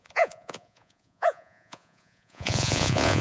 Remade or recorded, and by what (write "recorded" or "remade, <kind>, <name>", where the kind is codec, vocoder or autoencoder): remade, vocoder, Vocos